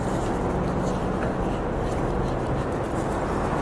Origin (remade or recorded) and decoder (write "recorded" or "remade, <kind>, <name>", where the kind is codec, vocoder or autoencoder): remade, vocoder, BigVGAN v2